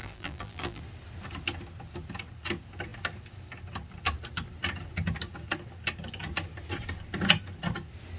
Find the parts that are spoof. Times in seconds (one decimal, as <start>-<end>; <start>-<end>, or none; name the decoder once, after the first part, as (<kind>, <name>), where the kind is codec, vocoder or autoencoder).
0.0-0.8 (vocoder, BigVGAN v2)